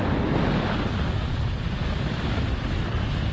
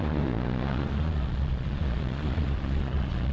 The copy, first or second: second